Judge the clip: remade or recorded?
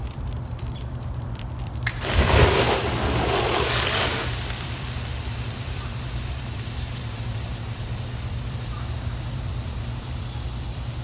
remade